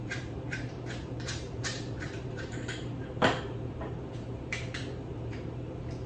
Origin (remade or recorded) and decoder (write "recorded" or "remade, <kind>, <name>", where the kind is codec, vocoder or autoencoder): remade, vocoder, BigVGAN v2